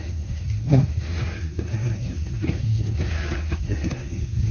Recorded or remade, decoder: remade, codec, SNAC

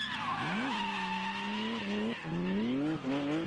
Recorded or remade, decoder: recorded